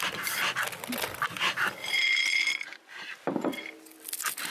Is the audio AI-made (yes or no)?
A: no